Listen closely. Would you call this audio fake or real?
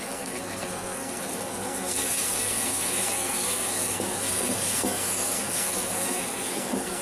fake